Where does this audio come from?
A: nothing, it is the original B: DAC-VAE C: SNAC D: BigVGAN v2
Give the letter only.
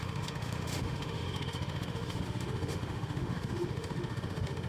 B